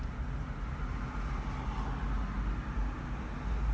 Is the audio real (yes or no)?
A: yes